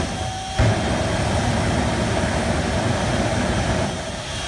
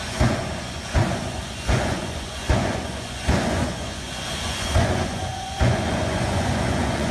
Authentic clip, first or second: first